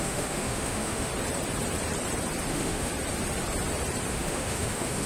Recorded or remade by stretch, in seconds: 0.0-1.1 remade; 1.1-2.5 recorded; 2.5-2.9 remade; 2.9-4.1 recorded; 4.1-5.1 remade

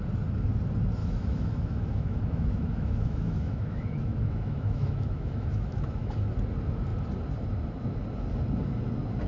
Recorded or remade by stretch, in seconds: 0.0-1.0 recorded; 1.0-6.1 remade; 6.1-9.3 recorded

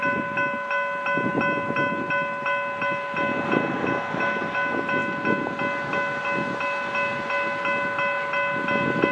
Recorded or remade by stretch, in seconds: 0.0-9.1 recorded

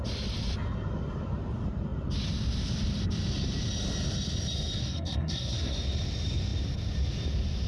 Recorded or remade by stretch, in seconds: 0.0-4.8 recorded; 4.8-5.8 remade; 5.8-7.7 recorded

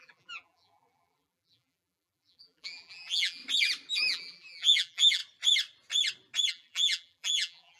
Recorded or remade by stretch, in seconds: 0.0-3.4 remade; 3.4-3.9 recorded; 3.9-5.2 remade; 5.2-6.5 recorded; 6.5-7.8 remade

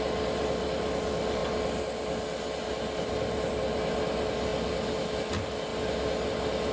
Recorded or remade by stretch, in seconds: 0.0-6.7 recorded